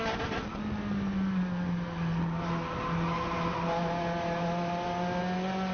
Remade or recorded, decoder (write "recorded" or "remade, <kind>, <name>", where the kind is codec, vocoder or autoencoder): recorded